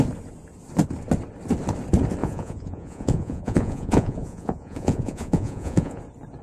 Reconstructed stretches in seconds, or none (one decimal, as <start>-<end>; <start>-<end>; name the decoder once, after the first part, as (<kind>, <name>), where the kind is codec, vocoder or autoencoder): 2.2-6.0 (vocoder, Vocos)